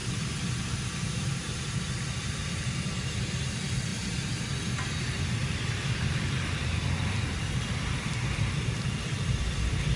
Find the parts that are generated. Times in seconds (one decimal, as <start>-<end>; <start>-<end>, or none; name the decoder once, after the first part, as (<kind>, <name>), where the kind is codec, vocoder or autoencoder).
0.0-3.9 (vocoder, BigVGAN v2); 5.0-10.0